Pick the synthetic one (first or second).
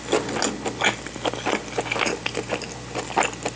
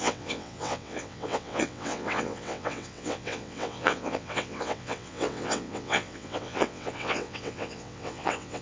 second